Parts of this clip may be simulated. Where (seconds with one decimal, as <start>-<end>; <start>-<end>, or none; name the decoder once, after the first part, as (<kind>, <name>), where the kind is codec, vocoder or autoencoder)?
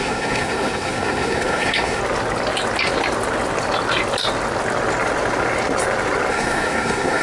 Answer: 0.0-2.0 (codec, SNAC); 6.3-7.2